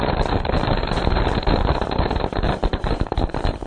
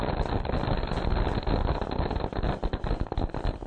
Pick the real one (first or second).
second